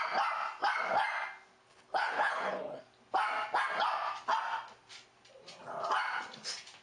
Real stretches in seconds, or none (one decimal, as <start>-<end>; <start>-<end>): 0.0-1.7; 2.8-6.8

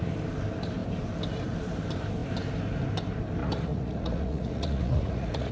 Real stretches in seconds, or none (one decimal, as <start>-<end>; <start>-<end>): 0.0-3.4

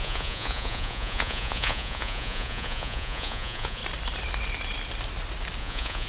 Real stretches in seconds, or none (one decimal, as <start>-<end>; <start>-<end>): 3.8-5.6

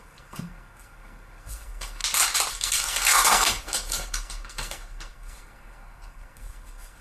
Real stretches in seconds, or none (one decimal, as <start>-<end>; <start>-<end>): 2.0-2.5

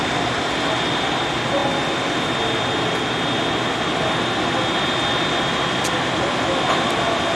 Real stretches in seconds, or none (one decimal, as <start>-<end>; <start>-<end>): 0.0-7.4